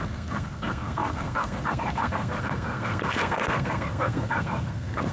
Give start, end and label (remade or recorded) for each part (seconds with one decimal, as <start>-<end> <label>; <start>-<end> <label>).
0.0-5.1 remade